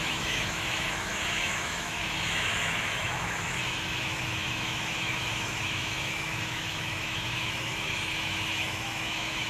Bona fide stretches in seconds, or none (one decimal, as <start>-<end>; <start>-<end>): none